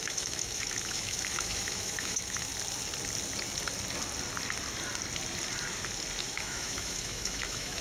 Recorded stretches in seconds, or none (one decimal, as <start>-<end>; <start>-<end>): 2.5-6.2